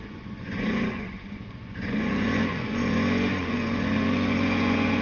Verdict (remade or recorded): remade